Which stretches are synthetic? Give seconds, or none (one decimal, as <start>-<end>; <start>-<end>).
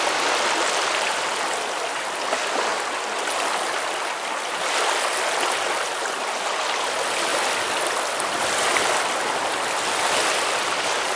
none